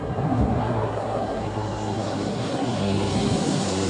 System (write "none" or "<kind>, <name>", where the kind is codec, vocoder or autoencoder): codec, SNAC